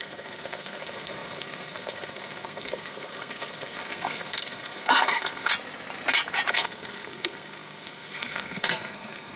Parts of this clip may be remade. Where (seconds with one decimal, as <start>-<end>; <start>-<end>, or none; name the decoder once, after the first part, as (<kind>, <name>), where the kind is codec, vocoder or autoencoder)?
0.0-5.5 (codec, SNAC); 6.5-9.4